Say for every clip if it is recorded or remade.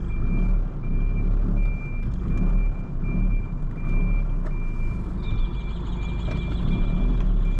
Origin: recorded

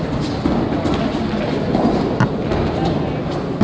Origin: recorded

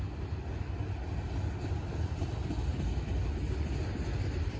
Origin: recorded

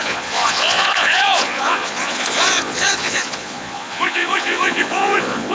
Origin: remade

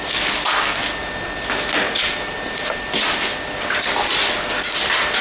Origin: recorded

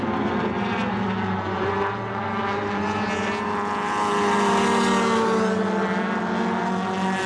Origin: recorded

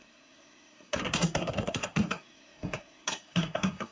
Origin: remade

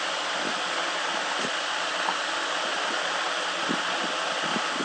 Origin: recorded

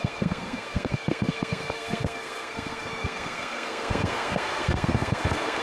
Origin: remade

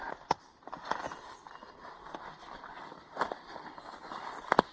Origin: recorded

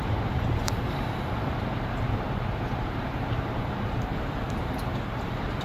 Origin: remade